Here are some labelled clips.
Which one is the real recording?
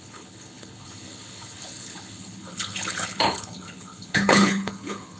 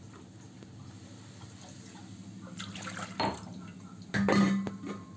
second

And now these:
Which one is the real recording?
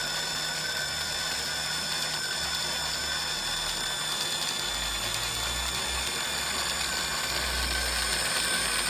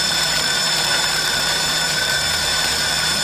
first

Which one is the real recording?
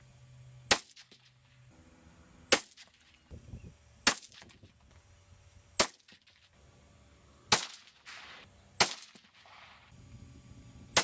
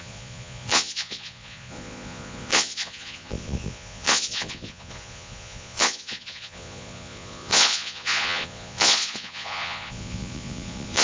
first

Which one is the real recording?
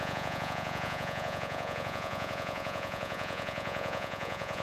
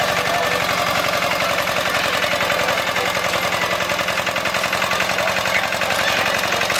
second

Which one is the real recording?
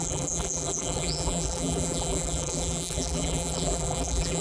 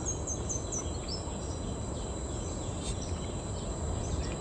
second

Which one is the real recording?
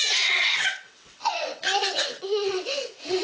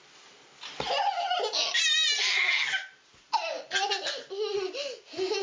second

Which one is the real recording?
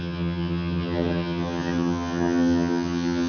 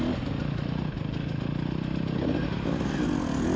second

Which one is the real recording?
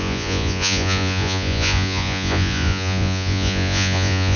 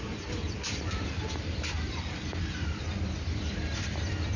second